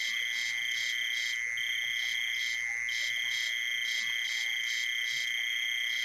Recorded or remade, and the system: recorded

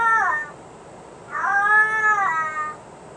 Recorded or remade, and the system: recorded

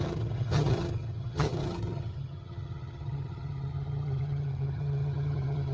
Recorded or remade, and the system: remade, vocoder, HiFi-GAN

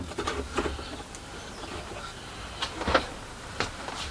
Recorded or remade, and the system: recorded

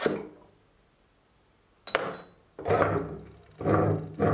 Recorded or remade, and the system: recorded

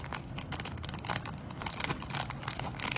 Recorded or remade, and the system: recorded